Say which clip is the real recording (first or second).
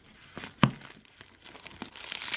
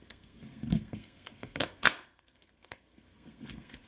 first